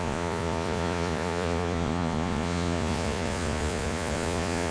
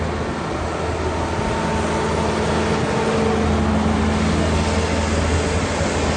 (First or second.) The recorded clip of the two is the second